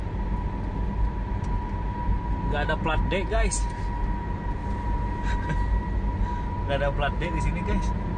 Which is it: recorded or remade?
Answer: recorded